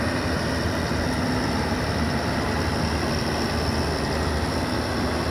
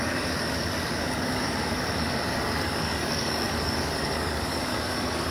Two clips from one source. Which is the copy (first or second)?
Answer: second